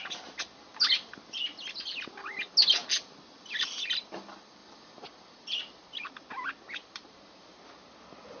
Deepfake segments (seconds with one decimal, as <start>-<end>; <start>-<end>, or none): 4.6-6.1; 6.8-7.6